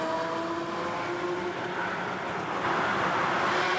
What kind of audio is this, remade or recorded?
recorded